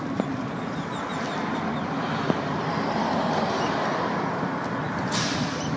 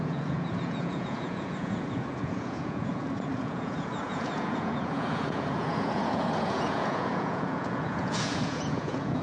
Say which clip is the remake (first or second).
second